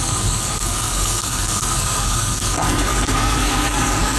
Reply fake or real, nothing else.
fake